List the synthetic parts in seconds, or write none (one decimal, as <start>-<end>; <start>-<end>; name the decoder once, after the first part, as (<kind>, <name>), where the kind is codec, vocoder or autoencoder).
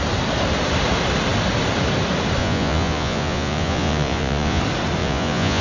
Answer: 2.4-4.6 (vocoder, Vocos); 5.0-5.6